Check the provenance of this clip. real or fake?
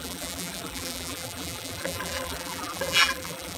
fake